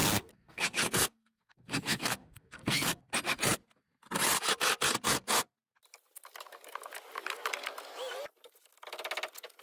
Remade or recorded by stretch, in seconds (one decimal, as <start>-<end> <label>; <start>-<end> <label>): 0.0-3.0 remade; 3.0-9.6 recorded